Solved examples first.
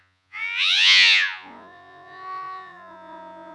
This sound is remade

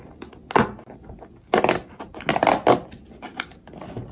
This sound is recorded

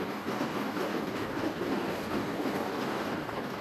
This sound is remade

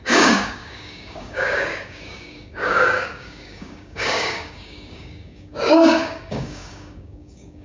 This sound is remade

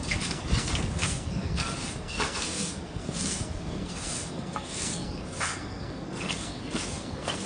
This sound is remade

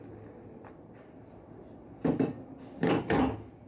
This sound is recorded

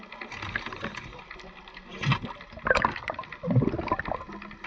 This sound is recorded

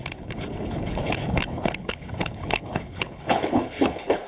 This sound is remade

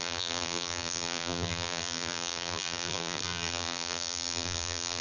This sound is remade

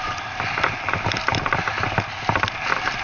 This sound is recorded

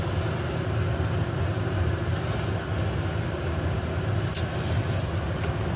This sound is recorded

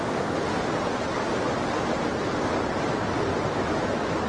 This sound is recorded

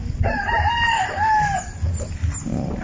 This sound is recorded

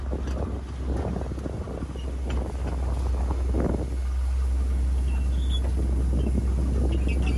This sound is recorded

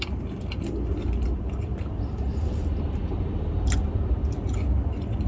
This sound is recorded